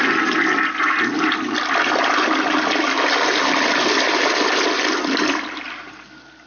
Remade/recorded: recorded